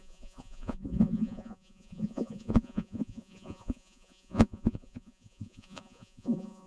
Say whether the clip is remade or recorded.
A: remade